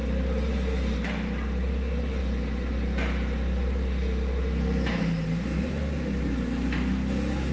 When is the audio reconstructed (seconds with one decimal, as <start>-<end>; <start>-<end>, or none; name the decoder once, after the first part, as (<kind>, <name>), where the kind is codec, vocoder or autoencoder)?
none